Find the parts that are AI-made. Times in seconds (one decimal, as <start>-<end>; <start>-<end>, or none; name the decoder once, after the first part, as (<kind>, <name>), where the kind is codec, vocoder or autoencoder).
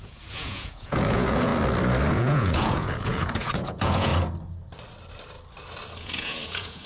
0.0-1.5 (vocoder, Vocos); 2.1-4.1; 6.0-6.9